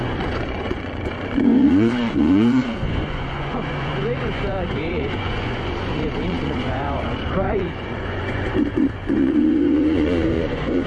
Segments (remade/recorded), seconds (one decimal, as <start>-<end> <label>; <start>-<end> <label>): 0.0-10.9 remade

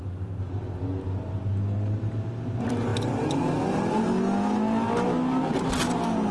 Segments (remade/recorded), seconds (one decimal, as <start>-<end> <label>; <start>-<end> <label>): 0.0-6.3 recorded

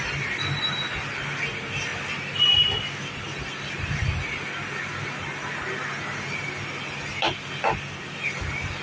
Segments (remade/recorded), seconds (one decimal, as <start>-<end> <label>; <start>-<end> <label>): 0.0-8.8 recorded

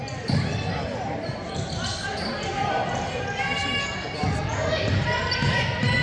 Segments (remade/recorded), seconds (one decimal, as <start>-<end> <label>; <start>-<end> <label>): 0.0-6.0 recorded

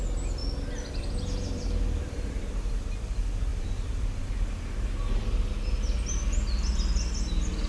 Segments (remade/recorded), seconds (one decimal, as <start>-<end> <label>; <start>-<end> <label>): 0.0-3.5 recorded; 3.5-4.5 remade; 4.5-7.7 recorded

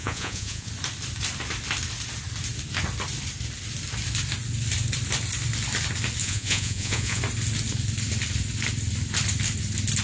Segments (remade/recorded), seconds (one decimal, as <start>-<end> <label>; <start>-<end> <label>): 0.0-0.7 remade; 0.7-6.2 recorded; 6.2-7.2 remade; 7.2-10.0 recorded

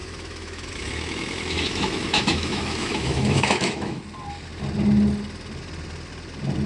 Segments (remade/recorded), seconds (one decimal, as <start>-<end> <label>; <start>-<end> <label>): 0.0-4.0 remade; 4.0-6.7 recorded

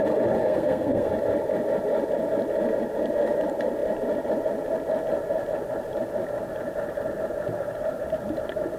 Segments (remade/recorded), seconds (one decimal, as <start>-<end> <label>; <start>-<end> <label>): 0.0-0.4 recorded; 0.4-1.1 remade; 1.1-8.8 recorded